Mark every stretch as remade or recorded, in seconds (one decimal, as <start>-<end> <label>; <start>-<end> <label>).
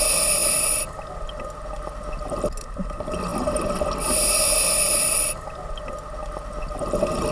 0.0-7.3 recorded